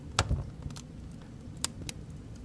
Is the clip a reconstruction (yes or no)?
no